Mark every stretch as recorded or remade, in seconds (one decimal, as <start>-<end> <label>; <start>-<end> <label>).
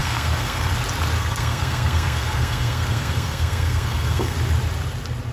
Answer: 0.0-0.7 remade; 0.7-1.2 recorded; 1.2-4.4 remade; 4.4-5.3 recorded